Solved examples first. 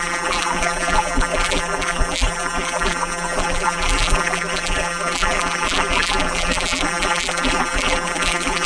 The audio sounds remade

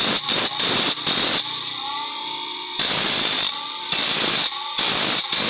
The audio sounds remade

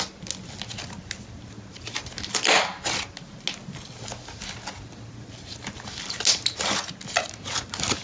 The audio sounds recorded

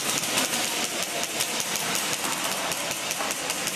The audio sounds recorded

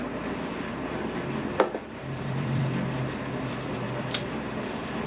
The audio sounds remade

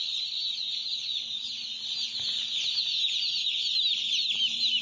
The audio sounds remade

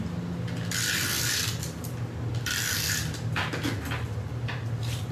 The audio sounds recorded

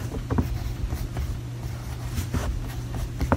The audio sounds recorded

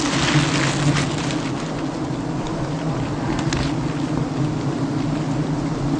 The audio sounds recorded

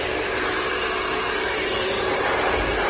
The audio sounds remade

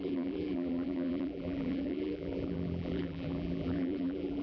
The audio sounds remade